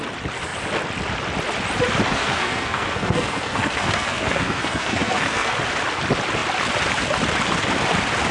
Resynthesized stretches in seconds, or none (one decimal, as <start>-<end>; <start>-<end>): 2.1-5.5